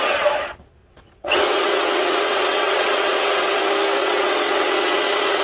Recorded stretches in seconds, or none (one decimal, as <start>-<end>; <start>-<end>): 0.0-0.8; 3.6-4.0